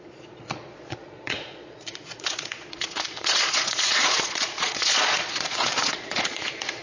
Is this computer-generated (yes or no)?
yes